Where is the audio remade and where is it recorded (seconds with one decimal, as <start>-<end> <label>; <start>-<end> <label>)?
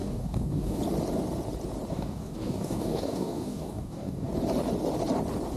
0.0-0.8 remade; 0.8-1.9 recorded; 1.9-4.3 remade; 4.3-5.6 recorded